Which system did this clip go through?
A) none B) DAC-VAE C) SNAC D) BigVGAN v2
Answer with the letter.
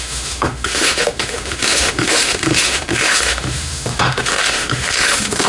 B